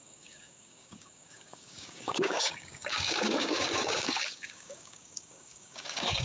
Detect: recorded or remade remade